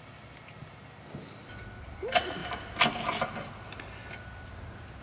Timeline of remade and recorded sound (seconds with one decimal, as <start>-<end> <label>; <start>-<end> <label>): 0.0-5.0 recorded